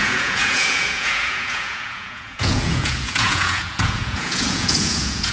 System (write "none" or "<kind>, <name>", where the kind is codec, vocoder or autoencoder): vocoder, Vocos